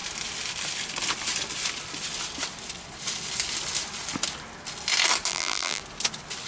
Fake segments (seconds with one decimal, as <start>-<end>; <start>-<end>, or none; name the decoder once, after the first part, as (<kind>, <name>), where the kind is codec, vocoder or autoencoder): 5.3-5.8 (vocoder, BigVGAN v2)